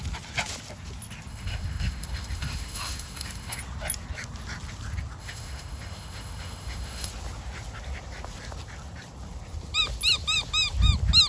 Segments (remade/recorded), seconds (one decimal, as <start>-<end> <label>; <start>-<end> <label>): 0.0-1.3 recorded; 1.3-3.6 remade; 3.6-5.2 recorded; 5.2-7.1 remade; 7.1-11.3 recorded